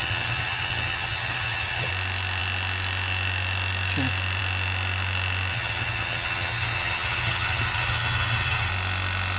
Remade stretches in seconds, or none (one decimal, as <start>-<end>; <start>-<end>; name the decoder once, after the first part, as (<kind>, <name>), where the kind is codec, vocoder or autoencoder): 0.0-1.9 (vocoder, HiFi-GAN); 5.5-8.7